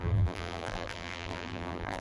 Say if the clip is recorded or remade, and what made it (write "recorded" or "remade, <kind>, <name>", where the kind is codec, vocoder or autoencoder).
remade, vocoder, BigVGAN v2